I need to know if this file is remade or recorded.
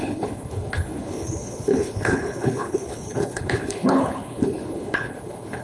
remade